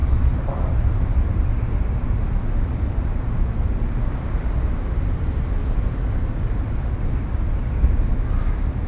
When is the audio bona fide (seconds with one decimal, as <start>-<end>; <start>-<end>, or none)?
2.4-8.9